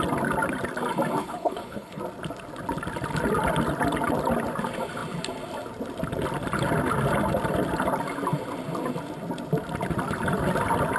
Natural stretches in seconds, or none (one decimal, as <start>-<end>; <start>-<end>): 0.0-1.2; 2.0-11.0